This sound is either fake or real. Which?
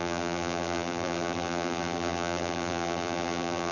fake